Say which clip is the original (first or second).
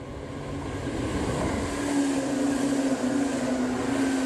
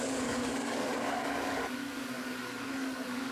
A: first